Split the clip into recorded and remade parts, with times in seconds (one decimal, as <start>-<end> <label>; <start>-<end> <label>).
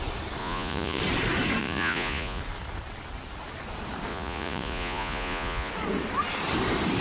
0.0-0.4 recorded; 0.4-1.0 remade; 1.0-1.6 recorded; 1.6-2.4 remade; 2.4-4.1 recorded; 4.1-5.7 remade; 5.7-7.0 recorded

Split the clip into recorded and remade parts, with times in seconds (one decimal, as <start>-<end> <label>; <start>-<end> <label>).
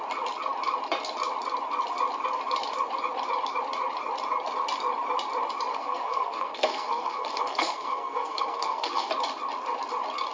0.0-5.7 recorded; 5.7-9.1 remade; 9.1-10.3 recorded